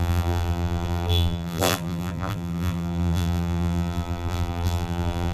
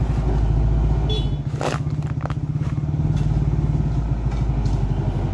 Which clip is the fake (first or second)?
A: first